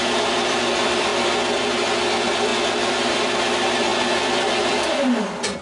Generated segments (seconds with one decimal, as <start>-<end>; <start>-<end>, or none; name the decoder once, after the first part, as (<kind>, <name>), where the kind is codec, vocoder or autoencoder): 0.0-1.1 (vocoder, BigVGAN v2); 2.1-2.5; 3.1-5.6